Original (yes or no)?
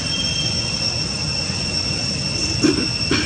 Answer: yes